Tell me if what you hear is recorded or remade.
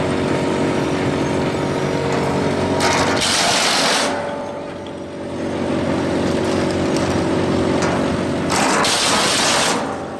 recorded